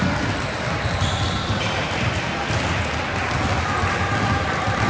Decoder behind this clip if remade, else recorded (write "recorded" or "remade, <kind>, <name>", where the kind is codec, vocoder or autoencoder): recorded